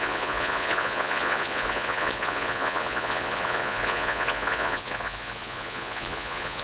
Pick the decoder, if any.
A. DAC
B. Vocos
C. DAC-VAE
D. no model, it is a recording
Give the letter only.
B